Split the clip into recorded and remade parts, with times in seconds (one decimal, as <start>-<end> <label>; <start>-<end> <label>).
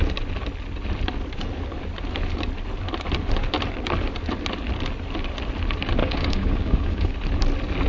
0.0-6.0 recorded; 6.0-7.1 remade; 7.1-7.9 recorded